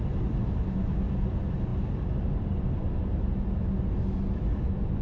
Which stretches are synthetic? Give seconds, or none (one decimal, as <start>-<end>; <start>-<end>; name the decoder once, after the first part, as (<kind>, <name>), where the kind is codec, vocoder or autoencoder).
none